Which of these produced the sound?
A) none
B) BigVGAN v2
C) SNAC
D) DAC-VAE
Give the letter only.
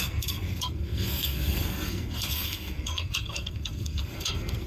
C